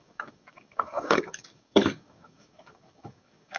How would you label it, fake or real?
fake